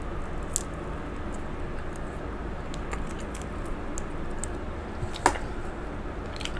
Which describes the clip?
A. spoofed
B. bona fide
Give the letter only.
B